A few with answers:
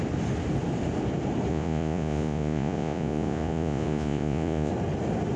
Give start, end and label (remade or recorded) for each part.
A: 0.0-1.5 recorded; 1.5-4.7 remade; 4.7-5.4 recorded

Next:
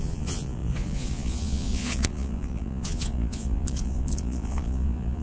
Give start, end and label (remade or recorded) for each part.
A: 0.0-5.2 remade

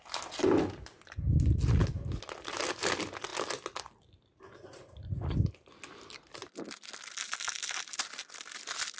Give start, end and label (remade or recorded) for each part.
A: 0.0-9.0 recorded

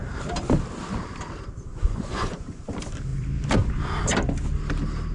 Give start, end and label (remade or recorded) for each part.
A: 0.0-1.7 recorded; 1.7-2.7 remade; 2.7-5.1 recorded